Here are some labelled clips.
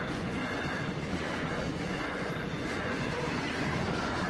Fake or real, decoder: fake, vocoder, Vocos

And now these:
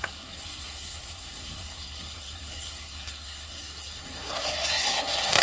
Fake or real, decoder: fake, codec, SNAC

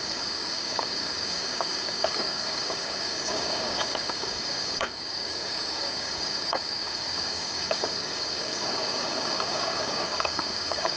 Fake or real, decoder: fake, codec, DAC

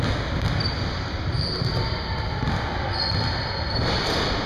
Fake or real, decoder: real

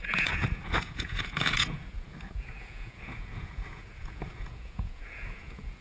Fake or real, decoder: fake, vocoder, Vocos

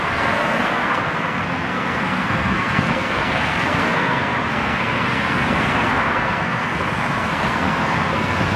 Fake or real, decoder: fake, codec, SNAC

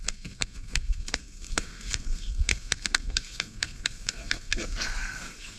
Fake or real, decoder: fake, codec, SNAC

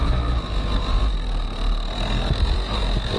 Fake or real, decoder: real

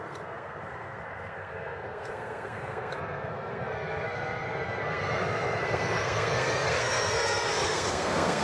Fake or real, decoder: fake, codec, SNAC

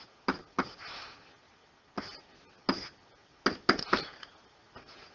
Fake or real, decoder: real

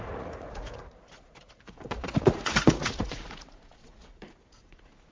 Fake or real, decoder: fake, vocoder, Vocos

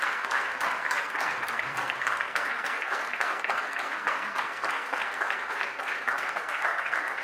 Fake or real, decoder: fake, codec, SNAC